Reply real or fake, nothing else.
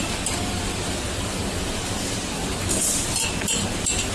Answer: real